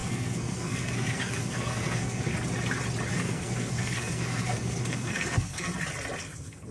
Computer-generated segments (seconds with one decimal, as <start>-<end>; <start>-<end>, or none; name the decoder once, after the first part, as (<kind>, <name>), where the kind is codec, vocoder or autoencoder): 0.0-2.3 (codec, SNAC); 3.1-5.7; 6.2-6.7